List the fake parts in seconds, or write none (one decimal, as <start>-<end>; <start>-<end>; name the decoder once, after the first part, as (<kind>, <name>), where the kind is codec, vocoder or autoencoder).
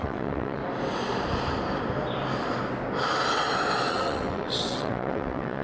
0.0-0.6 (vocoder, WaveNeXt); 3.9-5.6